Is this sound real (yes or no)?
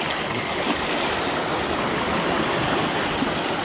yes